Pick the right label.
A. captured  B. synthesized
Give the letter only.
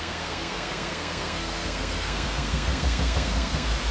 B